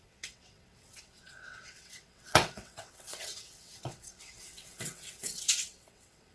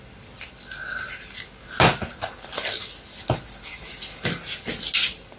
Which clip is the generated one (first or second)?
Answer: first